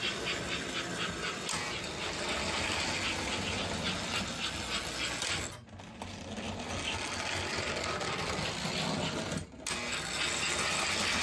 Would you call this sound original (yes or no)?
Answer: yes